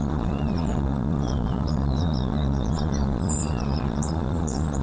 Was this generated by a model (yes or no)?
yes